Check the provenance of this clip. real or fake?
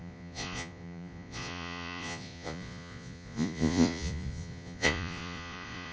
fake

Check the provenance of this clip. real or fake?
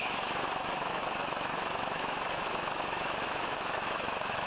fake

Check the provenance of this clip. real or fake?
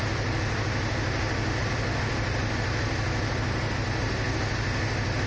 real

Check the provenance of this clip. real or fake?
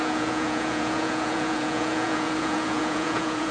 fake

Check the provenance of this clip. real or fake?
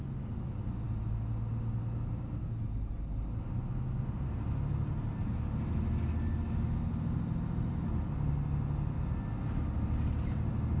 real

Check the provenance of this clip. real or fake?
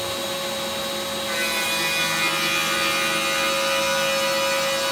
real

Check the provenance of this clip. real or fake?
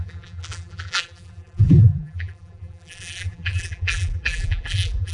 fake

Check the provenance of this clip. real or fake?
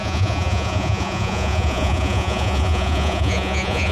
fake